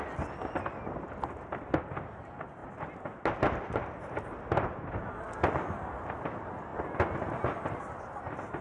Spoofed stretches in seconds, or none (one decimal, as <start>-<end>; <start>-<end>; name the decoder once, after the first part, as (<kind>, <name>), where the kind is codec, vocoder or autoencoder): none